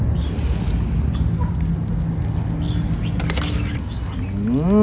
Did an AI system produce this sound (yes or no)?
no